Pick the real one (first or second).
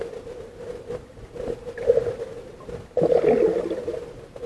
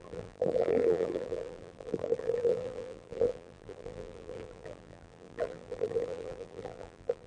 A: first